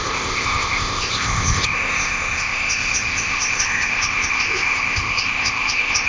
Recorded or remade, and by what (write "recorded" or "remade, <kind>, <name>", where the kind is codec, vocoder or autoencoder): remade, codec, ZipCodec